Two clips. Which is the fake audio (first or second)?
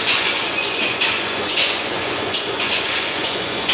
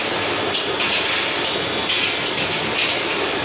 first